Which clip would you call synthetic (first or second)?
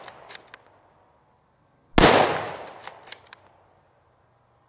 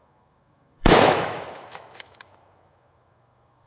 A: second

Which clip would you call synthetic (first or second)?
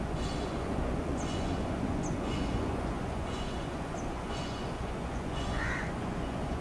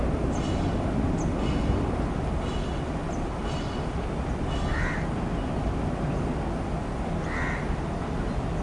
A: first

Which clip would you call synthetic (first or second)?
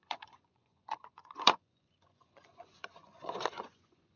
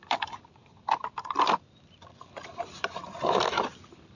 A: first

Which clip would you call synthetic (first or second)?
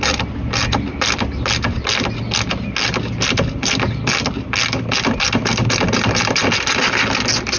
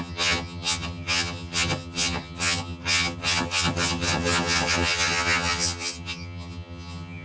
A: second